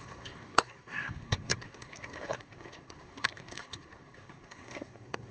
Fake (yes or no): yes